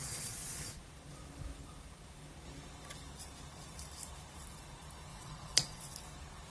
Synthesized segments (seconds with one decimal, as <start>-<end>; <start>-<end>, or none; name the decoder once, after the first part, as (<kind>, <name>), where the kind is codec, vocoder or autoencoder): 0.0-0.8 (vocoder, Vocos); 5.1-5.8